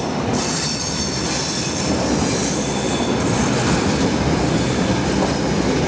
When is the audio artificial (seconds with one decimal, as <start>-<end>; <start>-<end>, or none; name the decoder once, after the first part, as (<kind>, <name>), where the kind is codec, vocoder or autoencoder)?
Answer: none